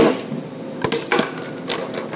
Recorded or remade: recorded